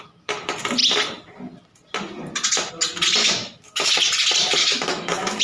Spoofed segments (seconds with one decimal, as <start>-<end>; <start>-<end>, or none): 3.2-3.9; 4.6-5.4